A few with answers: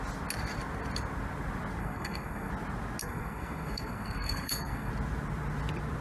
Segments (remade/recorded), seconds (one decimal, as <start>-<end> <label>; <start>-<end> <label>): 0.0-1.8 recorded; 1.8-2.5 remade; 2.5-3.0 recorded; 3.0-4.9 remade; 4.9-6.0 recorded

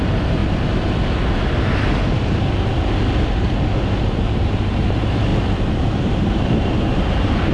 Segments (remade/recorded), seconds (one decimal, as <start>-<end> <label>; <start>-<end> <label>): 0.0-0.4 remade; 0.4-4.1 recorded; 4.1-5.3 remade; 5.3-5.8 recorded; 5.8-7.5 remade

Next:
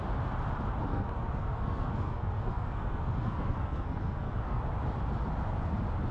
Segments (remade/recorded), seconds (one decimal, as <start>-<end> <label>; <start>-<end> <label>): 0.0-0.9 recorded; 0.9-4.6 remade; 4.6-6.1 recorded

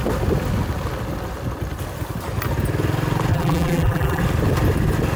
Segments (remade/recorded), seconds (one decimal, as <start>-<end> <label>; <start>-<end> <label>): 0.0-3.3 recorded; 3.3-4.2 remade; 4.2-5.2 recorded

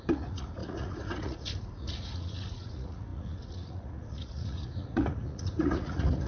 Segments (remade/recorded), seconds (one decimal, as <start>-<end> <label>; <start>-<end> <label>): 0.0-6.3 remade

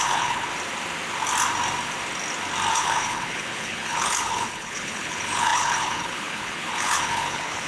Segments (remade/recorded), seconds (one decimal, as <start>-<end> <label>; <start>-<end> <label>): 0.0-0.5 remade; 0.5-2.7 recorded; 2.7-7.7 remade

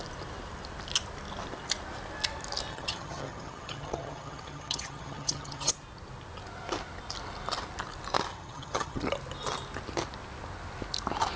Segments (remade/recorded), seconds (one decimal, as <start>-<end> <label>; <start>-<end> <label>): 0.0-2.7 recorded; 2.7-5.7 remade; 5.7-8.3 recorded; 8.3-9.0 remade; 9.0-11.4 recorded